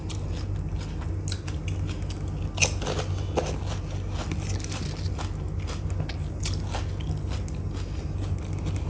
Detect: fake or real real